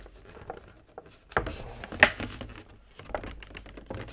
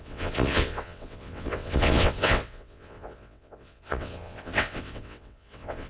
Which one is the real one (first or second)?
first